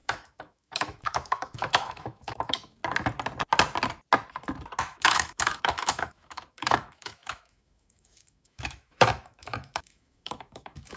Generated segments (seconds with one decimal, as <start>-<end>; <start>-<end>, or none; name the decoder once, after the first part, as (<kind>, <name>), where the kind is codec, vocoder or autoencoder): 0.0-2.8 (autoencoder, DAC-VAE); 4.8-11.0